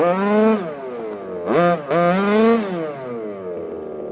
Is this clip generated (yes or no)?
no